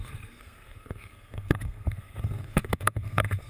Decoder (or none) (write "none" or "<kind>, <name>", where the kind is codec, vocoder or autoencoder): codec, SNAC